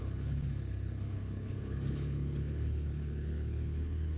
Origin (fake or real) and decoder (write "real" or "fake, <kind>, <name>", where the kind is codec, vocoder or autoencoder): fake, codec, HILCodec